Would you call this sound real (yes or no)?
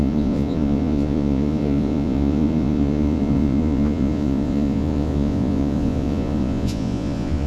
no